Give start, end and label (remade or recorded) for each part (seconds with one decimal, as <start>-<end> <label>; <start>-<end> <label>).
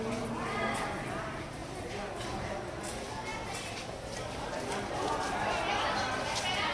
0.0-6.7 recorded